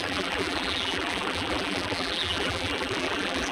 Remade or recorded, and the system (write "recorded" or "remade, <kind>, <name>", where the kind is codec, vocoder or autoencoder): remade, vocoder, BigVGAN v2